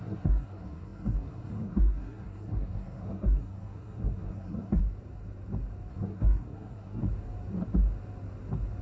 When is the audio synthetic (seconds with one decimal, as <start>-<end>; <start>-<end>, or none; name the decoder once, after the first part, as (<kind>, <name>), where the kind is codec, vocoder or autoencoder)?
0.0-4.8 (codec, SNAC); 5.9-7.0

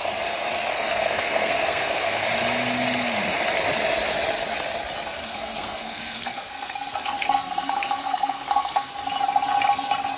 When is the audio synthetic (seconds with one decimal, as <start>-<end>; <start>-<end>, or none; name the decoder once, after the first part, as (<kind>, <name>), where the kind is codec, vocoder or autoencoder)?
0.7-2.2 (codec, SNAC); 5.2-8.9

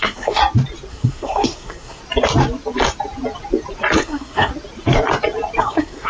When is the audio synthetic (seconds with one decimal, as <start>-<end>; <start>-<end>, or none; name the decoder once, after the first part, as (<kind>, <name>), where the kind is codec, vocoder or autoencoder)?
0.0-0.4 (codec, SNAC); 0.9-2.0; 4.0-4.5; 5.6-6.1

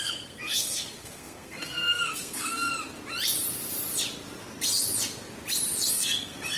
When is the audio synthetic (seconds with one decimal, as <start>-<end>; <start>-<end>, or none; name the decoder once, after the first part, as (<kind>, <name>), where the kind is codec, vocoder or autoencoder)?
0.0-2.7 (codec, SNAC); 5.9-6.6